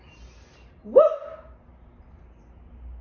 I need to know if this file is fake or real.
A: real